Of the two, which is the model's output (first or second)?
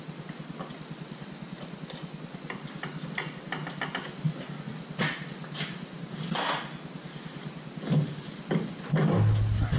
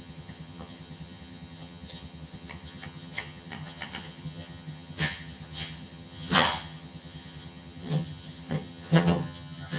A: second